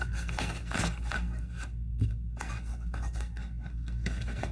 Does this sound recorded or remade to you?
remade